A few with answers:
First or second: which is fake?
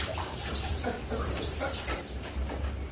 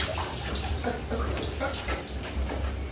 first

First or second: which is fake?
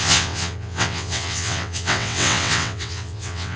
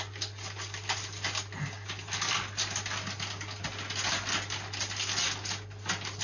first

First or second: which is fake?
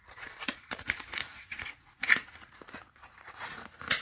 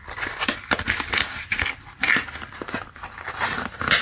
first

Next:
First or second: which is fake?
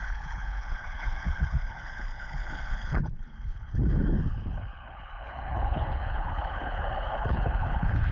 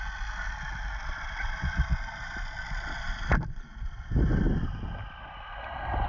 first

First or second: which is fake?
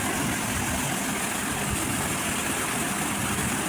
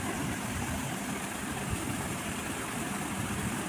second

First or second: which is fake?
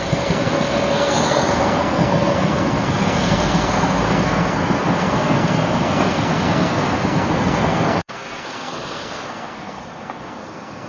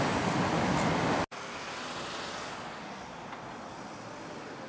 first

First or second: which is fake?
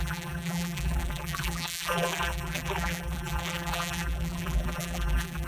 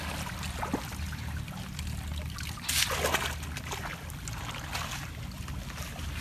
first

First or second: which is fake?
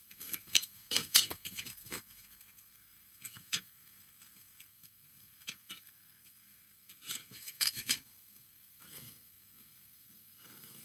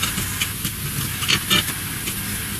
first